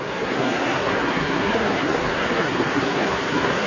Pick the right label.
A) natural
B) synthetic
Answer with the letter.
B